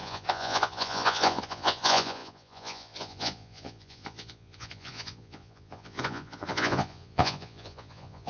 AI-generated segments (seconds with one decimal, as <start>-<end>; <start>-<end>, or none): 0.0-8.3